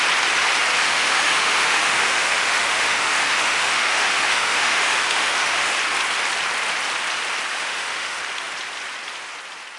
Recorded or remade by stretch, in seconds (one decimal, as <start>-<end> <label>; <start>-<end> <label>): 0.0-0.8 recorded; 0.8-5.7 remade; 5.7-7.5 recorded; 7.5-8.2 remade; 8.2-9.8 recorded